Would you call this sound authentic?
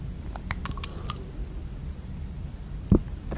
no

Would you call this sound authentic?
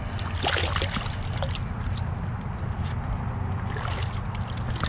yes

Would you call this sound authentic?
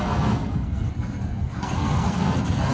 no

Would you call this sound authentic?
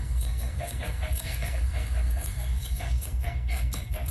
no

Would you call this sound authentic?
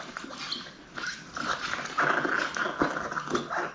yes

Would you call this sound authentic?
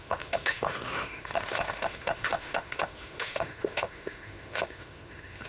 no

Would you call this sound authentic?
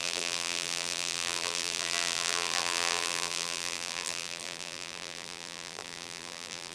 no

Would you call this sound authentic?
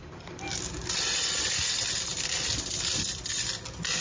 yes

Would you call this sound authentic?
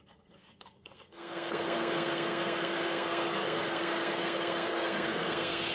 no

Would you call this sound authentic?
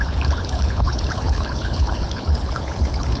no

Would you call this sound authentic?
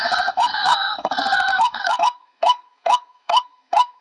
no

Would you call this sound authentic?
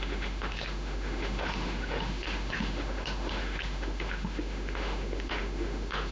no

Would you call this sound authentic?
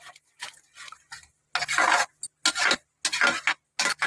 yes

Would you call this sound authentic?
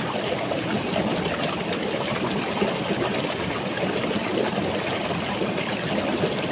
yes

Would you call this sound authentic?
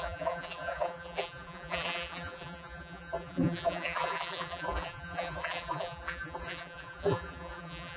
no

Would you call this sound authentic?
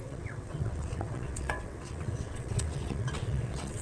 no